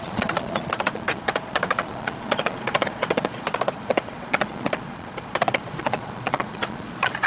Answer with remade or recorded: remade